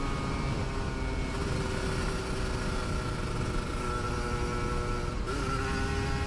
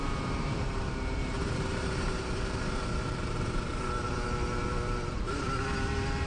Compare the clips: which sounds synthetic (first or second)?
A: second